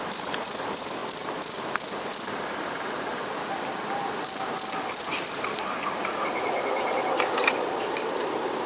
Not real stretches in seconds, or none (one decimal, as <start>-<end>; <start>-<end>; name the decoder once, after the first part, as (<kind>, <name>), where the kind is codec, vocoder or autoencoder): 0.0-1.0 (vocoder, BigVGAN v2); 5.9-8.7